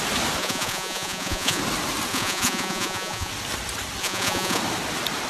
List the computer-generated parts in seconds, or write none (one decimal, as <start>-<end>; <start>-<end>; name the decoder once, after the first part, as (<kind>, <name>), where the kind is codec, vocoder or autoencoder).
0.4-1.6 (vocoder, Vocos); 2.1-3.3; 4.0-4.6